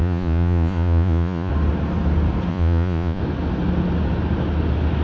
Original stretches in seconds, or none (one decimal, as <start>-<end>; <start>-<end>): 1.5-2.5; 3.2-5.0